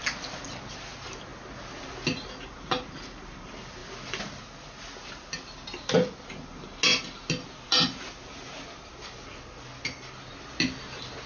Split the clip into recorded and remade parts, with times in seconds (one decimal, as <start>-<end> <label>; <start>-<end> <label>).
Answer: 0.0-11.3 recorded